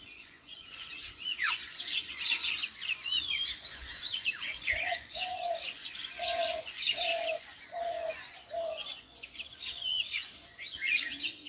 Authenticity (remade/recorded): remade